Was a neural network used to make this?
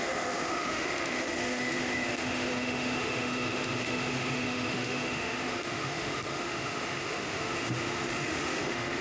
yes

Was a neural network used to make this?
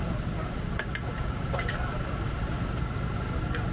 no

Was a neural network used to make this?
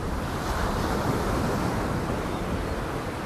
no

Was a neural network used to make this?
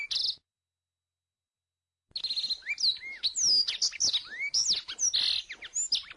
no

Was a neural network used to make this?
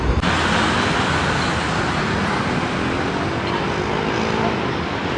no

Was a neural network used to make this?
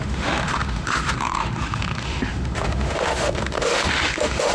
yes